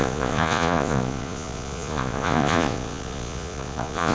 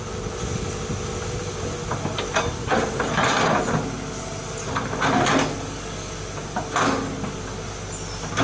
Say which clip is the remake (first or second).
first